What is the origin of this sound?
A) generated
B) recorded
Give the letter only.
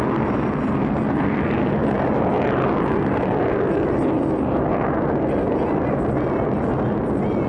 B